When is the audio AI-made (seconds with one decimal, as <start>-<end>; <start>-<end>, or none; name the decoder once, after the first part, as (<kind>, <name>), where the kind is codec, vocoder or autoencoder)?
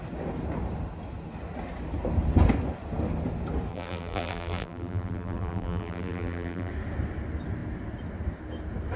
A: 3.7-6.7 (vocoder, BigVGAN v2)